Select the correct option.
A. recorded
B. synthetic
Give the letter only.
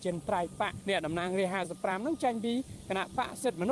B